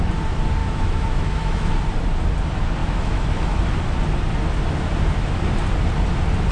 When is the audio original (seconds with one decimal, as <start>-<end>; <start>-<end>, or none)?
0.0-0.6; 1.7-2.8; 3.6-6.5